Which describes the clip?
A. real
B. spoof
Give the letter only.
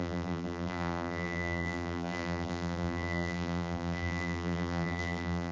B